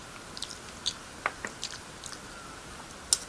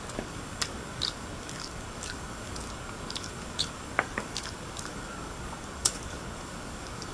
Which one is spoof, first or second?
second